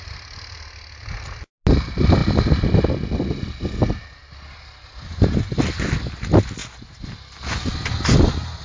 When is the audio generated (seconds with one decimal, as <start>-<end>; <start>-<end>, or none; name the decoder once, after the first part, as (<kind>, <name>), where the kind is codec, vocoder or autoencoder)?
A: 4.2-5.4 (vocoder, BigVGAN v2)